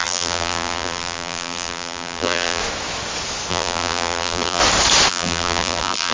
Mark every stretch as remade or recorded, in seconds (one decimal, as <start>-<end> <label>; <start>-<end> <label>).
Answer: 0.0-2.6 remade; 2.6-3.5 recorded; 3.5-4.6 remade; 4.6-5.1 recorded; 5.1-6.1 remade